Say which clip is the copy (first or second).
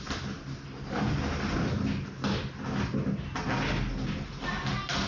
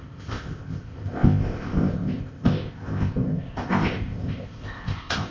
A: second